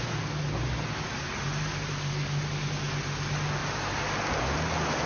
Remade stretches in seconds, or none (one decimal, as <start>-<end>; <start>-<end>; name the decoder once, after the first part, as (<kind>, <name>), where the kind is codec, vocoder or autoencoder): none